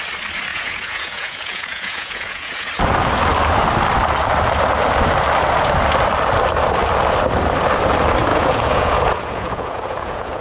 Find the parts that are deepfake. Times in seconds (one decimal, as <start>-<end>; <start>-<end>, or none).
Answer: 0.5-2.7; 8.3-10.4

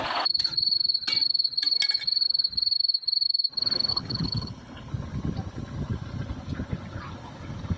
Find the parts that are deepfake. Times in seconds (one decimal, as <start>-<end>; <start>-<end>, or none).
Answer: 3.9-4.9

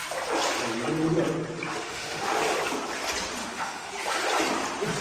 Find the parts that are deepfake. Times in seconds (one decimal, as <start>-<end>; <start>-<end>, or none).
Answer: 1.7-2.4; 3.4-3.9

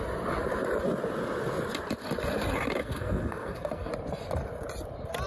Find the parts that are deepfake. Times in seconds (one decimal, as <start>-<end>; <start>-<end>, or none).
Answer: 2.8-3.9

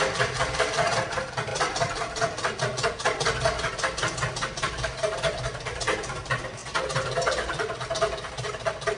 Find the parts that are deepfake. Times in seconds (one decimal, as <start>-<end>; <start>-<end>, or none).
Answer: none